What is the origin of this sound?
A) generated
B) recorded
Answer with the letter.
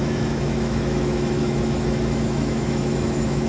A